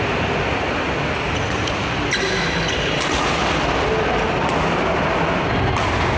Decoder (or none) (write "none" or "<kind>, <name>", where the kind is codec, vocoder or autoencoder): none